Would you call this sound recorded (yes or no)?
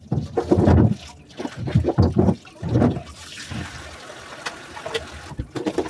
yes